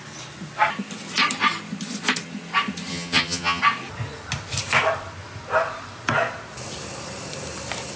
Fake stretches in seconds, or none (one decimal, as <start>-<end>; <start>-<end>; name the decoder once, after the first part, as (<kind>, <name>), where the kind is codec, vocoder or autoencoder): 2.9-3.6 (vocoder, HiFi-GAN)